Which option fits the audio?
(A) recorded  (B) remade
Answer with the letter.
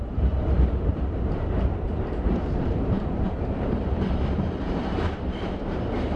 B